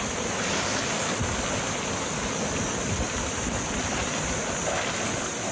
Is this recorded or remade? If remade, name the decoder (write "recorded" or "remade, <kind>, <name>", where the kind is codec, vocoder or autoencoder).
recorded